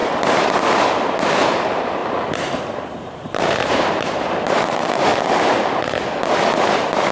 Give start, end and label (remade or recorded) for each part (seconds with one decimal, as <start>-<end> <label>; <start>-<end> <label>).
0.0-1.1 recorded; 1.1-2.0 remade; 2.0-2.8 recorded; 2.8-5.1 remade; 5.1-7.1 recorded